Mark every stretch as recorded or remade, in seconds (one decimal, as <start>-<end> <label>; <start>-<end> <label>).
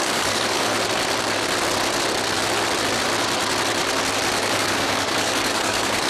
0.0-0.7 remade; 0.7-4.4 recorded; 4.4-6.1 remade